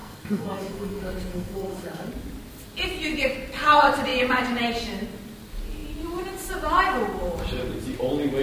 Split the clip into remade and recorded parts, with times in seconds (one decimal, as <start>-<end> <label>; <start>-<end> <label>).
0.0-2.1 remade; 2.1-8.4 recorded